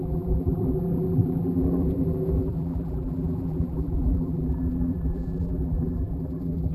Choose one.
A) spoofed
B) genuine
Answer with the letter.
A